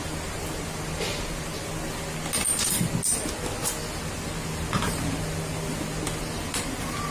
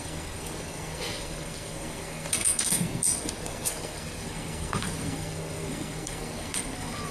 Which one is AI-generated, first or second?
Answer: second